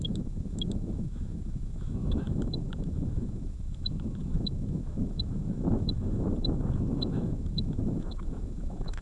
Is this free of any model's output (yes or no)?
no